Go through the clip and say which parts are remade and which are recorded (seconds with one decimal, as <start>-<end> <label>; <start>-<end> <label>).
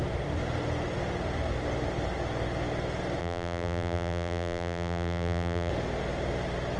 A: 0.0-3.2 recorded; 3.2-5.7 remade; 5.7-6.8 recorded